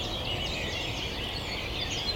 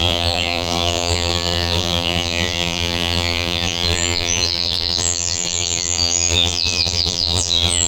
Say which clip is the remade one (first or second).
second